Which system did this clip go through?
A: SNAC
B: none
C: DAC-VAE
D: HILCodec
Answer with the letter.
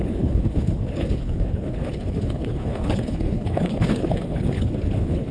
D